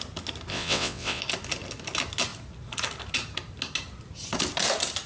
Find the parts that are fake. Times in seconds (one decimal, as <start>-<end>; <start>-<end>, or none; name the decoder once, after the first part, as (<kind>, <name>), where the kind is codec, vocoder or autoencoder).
0.5-1.2 (vocoder, WaveNeXt)